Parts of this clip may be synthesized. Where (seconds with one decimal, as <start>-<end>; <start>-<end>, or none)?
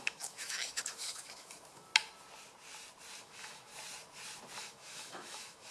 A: 0.0-1.9; 3.2-3.7; 4.6-5.7